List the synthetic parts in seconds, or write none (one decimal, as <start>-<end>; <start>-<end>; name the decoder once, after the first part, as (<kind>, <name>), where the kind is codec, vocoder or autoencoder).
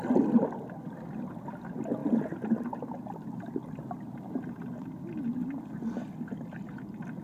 none